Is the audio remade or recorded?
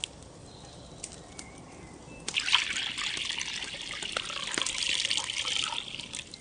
recorded